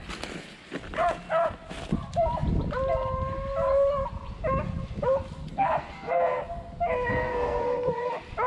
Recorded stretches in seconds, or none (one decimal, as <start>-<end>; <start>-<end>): 0.0-5.5; 6.4-7.1; 8.1-8.5